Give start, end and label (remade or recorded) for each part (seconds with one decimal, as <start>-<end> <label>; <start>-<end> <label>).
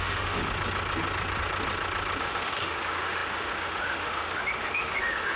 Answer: 0.0-0.4 remade; 0.4-2.2 recorded; 2.2-5.4 remade